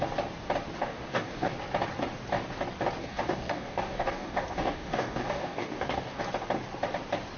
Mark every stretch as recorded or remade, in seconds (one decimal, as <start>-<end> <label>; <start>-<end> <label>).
0.0-0.8 recorded; 0.8-1.5 remade; 1.5-3.0 recorded; 3.0-6.2 remade; 6.2-7.4 recorded